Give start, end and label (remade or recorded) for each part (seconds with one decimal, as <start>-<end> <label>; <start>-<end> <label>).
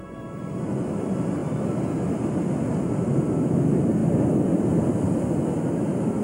0.0-6.2 recorded